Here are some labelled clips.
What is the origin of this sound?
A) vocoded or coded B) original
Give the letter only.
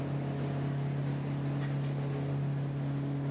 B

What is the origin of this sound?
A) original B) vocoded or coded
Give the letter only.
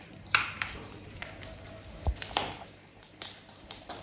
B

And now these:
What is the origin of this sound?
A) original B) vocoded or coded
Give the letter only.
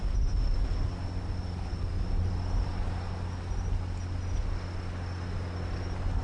A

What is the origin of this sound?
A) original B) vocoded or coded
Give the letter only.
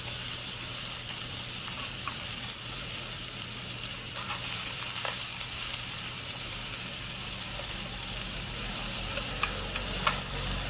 B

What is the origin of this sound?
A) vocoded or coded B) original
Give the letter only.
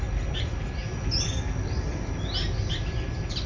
B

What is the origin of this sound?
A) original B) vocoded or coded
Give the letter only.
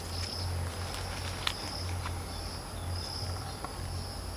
A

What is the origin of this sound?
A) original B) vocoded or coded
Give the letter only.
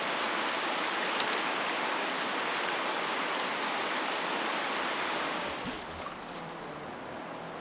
A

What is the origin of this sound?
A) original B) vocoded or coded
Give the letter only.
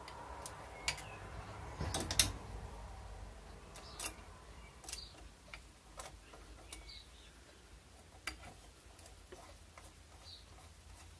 A